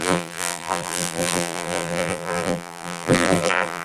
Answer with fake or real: fake